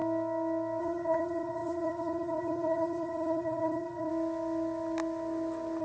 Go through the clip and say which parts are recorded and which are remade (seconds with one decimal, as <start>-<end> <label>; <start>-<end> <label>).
0.0-0.8 recorded; 0.8-4.1 remade; 4.1-5.8 recorded